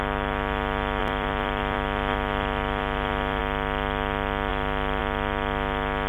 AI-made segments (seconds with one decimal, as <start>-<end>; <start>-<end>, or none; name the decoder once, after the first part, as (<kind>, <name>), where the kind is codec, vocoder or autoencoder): 1.0-3.4 (vocoder, BigVGAN v2); 4.5-5.0

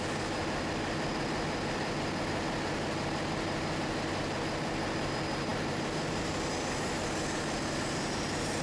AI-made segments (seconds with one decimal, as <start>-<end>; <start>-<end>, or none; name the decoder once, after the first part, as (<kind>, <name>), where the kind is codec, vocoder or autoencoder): none

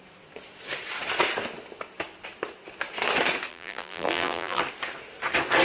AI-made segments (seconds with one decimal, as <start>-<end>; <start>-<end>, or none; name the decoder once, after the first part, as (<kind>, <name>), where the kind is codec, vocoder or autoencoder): 3.5-4.6 (vocoder, BigVGAN v2)

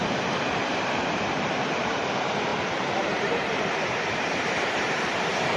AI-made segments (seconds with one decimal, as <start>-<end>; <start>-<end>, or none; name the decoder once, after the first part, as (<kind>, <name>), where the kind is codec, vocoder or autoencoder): 0.0-5.6 (vocoder, BigVGAN v2)

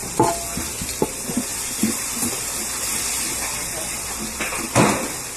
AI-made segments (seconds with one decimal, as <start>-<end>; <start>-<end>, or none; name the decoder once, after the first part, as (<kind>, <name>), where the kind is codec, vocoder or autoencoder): 1.5-4.7 (vocoder, BigVGAN v2)

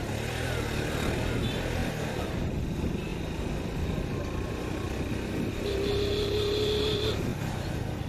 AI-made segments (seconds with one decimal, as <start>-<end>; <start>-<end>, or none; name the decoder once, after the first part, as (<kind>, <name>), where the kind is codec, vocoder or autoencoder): 7.3-8.1 (vocoder, BigVGAN v2)